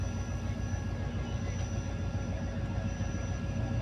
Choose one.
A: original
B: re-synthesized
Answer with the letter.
A